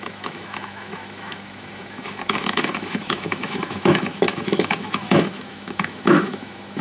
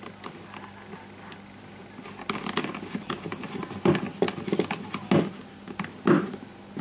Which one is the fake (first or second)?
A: first